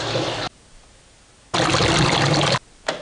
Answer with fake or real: real